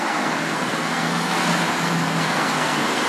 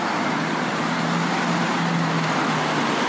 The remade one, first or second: first